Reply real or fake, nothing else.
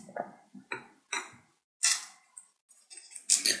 real